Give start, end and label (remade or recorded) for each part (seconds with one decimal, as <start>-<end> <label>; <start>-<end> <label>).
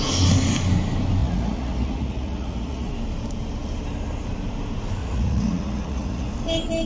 0.0-1.2 recorded; 1.2-2.9 remade; 2.9-5.0 recorded; 5.0-6.3 remade; 6.3-6.9 recorded